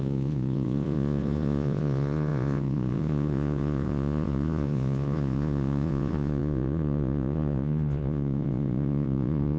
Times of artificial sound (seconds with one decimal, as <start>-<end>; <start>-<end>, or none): 0.0-9.6